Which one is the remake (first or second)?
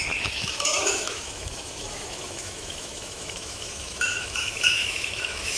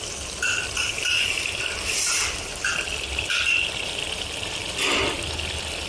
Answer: first